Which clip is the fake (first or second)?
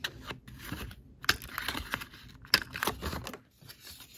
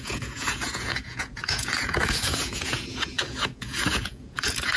second